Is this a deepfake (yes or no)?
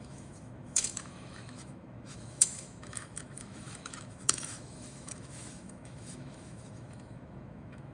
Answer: yes